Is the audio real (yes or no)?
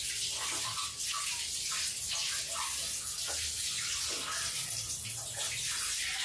yes